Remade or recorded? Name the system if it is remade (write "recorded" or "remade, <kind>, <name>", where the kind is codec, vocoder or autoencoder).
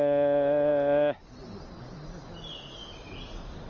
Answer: recorded